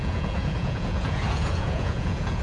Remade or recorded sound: remade